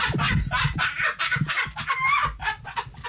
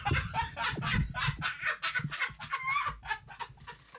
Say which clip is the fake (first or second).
first